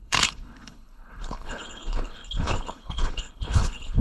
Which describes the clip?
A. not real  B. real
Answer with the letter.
A